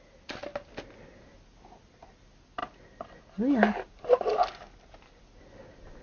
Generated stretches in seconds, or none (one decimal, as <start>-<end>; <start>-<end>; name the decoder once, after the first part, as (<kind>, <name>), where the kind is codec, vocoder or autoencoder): none